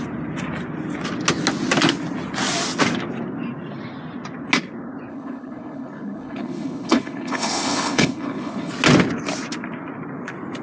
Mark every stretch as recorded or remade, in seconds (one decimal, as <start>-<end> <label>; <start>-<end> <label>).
0.0-5.1 recorded; 5.1-8.7 remade; 8.7-10.6 recorded